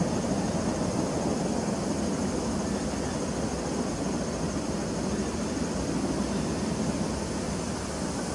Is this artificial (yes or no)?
no